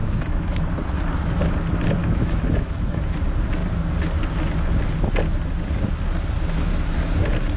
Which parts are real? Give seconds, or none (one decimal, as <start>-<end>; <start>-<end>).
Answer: 1.0-2.0; 3.1-7.6